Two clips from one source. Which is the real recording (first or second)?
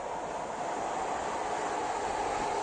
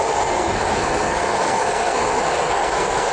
first